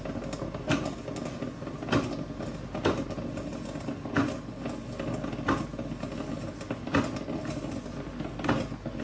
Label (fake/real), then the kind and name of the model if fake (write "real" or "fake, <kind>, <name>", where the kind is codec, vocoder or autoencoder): real